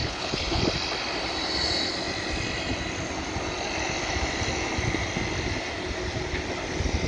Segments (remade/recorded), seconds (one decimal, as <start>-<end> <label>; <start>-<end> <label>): 0.0-0.6 remade; 0.6-7.1 recorded